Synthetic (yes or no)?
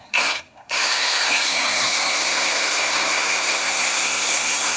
yes